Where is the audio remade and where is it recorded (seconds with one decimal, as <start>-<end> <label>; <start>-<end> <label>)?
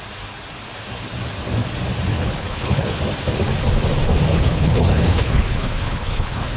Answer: 0.0-2.1 recorded; 2.1-3.0 remade; 3.0-4.3 recorded; 4.3-6.6 remade